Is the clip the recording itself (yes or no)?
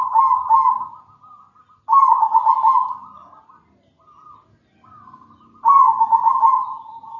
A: yes